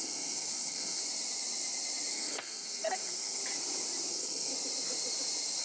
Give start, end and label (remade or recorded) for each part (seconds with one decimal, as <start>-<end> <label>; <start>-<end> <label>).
0.0-1.0 remade; 1.0-2.1 recorded; 2.1-3.4 remade; 3.4-4.1 recorded; 4.1-4.5 remade; 4.5-5.6 recorded